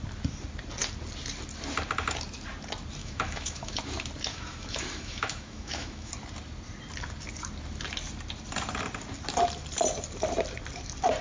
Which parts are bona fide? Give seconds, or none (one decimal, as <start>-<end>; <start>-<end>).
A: 0.0-3.0; 3.8-4.3; 6.1-11.2